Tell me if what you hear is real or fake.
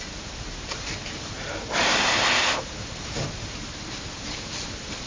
fake